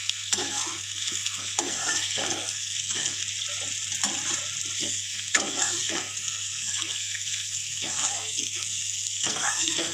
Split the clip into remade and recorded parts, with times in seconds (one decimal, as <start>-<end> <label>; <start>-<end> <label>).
0.0-3.2 remade; 3.2-4.8 recorded; 4.8-9.9 remade